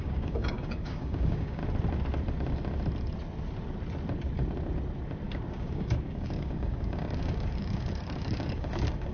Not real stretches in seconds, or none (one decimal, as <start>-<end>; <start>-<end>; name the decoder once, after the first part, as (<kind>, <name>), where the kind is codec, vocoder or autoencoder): 0.0-1.6 (codec, DAC); 5.5-9.1